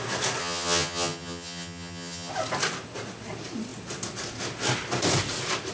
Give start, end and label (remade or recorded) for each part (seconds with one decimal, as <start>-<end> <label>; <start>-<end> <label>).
0.0-0.4 recorded; 0.4-2.3 remade; 2.3-5.7 recorded